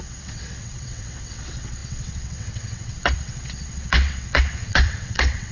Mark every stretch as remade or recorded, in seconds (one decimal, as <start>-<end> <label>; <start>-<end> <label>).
0.0-5.5 remade